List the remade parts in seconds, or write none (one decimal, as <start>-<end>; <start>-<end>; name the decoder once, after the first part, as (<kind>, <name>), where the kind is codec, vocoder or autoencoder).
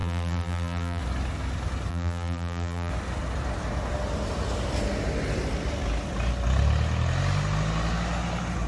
0.0-1.0 (vocoder, BigVGAN v2); 1.9-2.9